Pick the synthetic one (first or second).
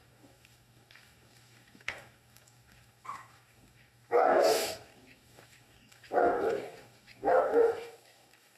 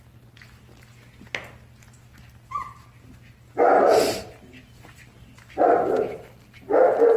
first